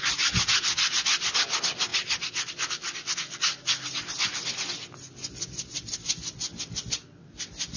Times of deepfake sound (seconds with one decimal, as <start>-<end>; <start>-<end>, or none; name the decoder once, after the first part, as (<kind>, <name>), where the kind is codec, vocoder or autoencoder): none